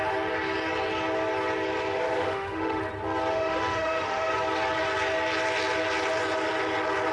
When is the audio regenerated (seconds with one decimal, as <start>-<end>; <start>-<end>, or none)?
1.9-2.8; 3.3-4.3